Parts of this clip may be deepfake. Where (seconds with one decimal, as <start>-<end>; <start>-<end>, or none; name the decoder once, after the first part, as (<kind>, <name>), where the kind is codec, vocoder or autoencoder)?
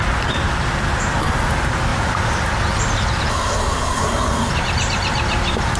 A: 3.3-4.5 (codec, SNAC)